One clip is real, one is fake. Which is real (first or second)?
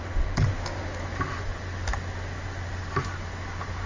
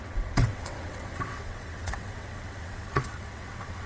first